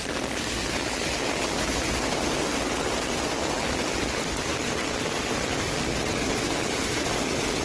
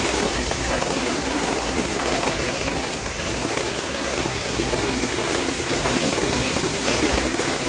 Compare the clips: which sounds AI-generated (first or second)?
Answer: second